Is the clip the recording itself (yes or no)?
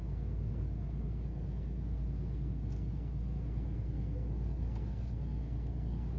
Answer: no